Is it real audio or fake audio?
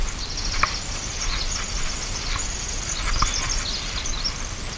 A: real